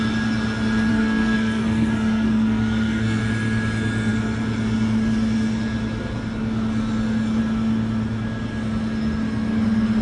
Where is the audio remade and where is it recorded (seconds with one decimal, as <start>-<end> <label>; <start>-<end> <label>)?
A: 0.0-0.9 recorded; 0.9-3.2 remade; 3.2-10.0 recorded